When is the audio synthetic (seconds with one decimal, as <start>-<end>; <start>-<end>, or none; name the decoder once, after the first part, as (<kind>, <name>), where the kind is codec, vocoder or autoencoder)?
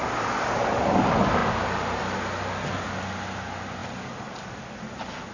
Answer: 1.4-2.0 (vocoder, BigVGAN v2)